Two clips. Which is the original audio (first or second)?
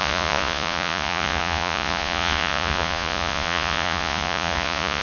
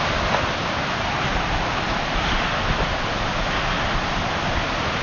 second